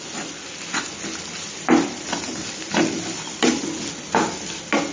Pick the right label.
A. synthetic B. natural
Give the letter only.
B